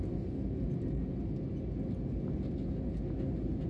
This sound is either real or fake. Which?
real